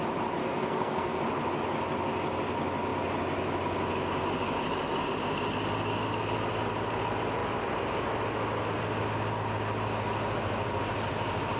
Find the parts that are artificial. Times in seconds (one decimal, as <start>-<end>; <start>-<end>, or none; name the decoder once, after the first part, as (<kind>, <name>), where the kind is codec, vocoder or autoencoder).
0.4-1.2 (codec, SNAC)